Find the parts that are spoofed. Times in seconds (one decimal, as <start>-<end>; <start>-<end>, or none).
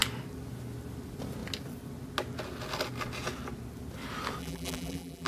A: 4.4-5.3